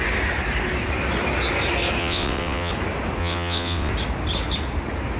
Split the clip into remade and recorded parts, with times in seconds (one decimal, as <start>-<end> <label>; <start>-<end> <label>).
0.0-2.0 recorded; 2.0-2.7 remade; 2.7-3.2 recorded; 3.2-3.9 remade; 3.9-5.2 recorded

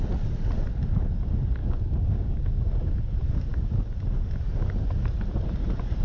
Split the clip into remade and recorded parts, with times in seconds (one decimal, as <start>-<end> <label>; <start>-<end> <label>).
0.0-1.6 recorded; 1.6-2.9 remade; 2.9-6.0 recorded

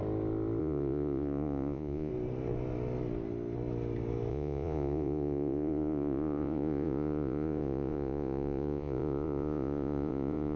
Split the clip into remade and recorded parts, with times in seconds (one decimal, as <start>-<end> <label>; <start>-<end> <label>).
0.0-0.6 recorded; 0.6-2.1 remade; 2.1-4.3 recorded; 4.3-10.6 remade

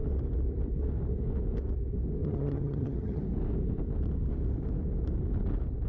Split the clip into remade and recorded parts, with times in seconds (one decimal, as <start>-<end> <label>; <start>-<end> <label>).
0.0-2.2 recorded; 2.2-3.2 remade; 3.2-5.9 recorded

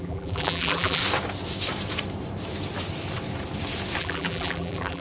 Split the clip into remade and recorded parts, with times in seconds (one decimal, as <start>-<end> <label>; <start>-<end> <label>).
0.0-1.0 remade; 1.0-4.0 recorded; 4.0-5.0 remade

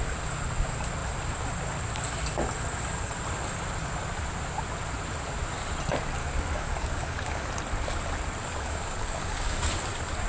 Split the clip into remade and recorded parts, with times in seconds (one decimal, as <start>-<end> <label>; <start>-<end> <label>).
0.0-6.2 recorded; 6.2-7.5 remade; 7.5-8.4 recorded; 8.4-9.7 remade; 9.7-10.3 recorded